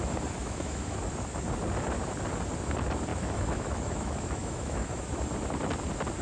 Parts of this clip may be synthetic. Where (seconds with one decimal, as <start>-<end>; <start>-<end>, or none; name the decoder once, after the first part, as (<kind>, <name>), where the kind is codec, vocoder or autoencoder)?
0.4-1.0 (autoencoder, DAC-VAE); 3.1-5.0